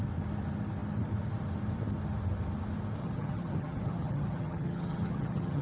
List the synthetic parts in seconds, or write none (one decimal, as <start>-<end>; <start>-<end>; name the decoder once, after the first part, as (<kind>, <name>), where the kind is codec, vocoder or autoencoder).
3.0-5.6 (vocoder, HiFi-GAN)